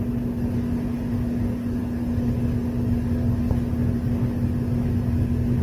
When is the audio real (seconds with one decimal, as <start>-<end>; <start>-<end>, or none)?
0.0-5.6